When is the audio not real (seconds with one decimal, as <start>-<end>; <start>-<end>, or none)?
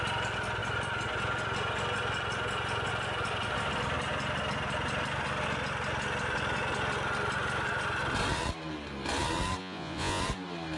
9.6-10.2